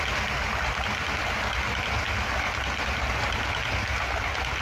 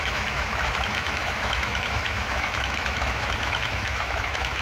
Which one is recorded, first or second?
first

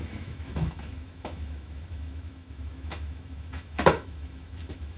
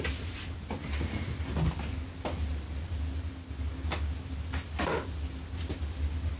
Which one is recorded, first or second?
second